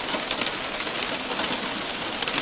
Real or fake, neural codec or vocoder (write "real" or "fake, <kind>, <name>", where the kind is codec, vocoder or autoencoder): real